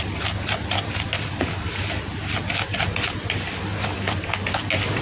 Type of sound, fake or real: real